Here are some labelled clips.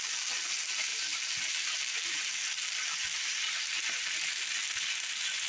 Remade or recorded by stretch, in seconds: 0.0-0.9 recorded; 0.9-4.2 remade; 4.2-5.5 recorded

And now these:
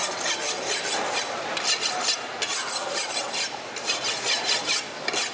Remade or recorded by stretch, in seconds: 0.0-2.8 recorded; 2.8-4.8 remade; 4.8-5.3 recorded

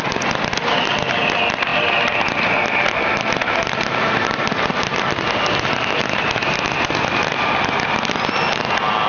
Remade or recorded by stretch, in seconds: 0.0-9.1 recorded